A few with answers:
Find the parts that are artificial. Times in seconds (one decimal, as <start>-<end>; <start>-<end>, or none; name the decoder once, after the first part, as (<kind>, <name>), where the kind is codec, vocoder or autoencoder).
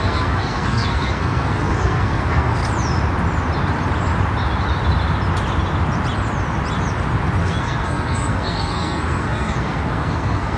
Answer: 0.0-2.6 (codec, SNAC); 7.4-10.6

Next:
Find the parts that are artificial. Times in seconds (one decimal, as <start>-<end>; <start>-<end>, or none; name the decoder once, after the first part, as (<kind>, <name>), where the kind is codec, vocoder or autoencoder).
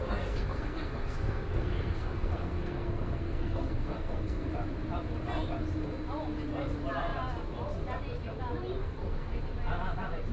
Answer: 0.0-4.5 (codec, SNAC); 8.8-9.4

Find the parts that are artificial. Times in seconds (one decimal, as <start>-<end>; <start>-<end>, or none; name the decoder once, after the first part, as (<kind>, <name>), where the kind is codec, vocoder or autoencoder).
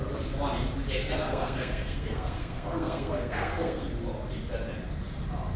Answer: 1.0-4.0 (codec, SNAC)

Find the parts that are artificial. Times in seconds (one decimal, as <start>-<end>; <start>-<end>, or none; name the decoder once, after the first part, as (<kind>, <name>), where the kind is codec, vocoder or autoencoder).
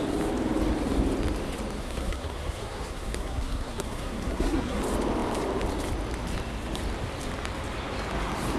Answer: 1.8-4.8 (codec, SNAC)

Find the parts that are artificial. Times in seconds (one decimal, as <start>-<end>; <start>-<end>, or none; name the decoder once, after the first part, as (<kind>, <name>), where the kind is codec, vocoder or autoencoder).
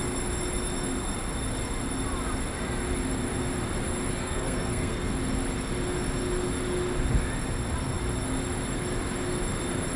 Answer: 4.2-5.1 (codec, SNAC)